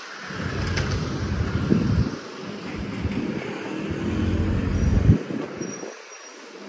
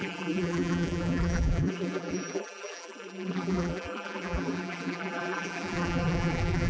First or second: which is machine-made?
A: second